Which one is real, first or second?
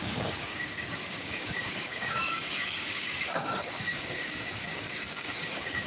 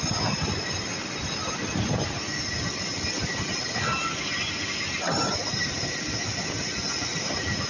second